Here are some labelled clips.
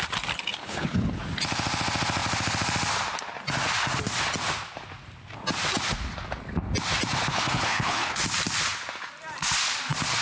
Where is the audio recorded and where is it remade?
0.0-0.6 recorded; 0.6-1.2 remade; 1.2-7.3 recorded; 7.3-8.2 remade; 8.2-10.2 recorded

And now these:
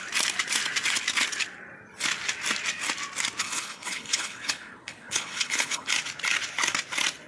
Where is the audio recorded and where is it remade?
0.0-3.4 recorded; 3.4-5.9 remade; 5.9-7.3 recorded

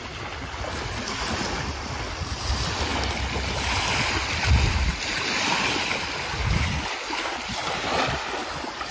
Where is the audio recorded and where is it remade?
0.0-8.9 recorded

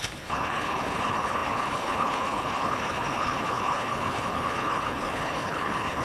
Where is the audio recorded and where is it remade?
0.0-6.0 remade

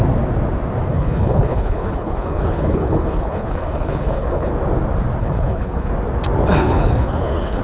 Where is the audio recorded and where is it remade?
0.0-0.9 recorded; 0.9-4.5 remade; 4.5-5.2 recorded; 5.2-5.9 remade; 5.9-6.6 recorded; 6.6-7.6 remade

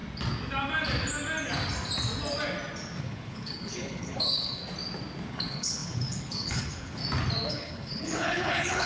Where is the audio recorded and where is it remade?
0.0-3.0 recorded; 3.0-4.6 remade; 4.6-5.3 recorded; 5.3-7.0 remade; 7.0-7.5 recorded; 7.5-8.9 remade

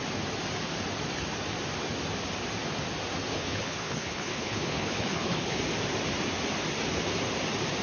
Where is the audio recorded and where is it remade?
0.0-3.3 recorded; 3.3-5.6 remade; 5.6-7.8 recorded

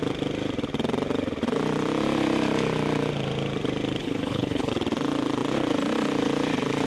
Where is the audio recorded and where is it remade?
0.0-4.0 recorded; 4.0-4.7 remade; 4.7-6.9 recorded